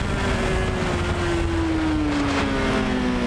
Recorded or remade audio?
recorded